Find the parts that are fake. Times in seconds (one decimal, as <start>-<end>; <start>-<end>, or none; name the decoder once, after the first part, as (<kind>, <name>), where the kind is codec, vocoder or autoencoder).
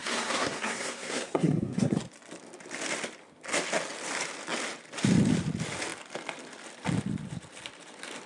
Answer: 0.0-2.0 (codec, SNAC)